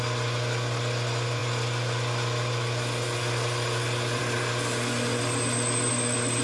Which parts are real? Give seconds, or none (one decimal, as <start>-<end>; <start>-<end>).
0.0-6.4